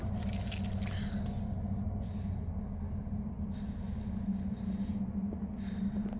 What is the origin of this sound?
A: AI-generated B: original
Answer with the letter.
B